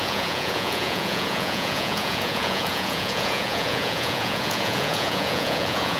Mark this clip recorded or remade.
remade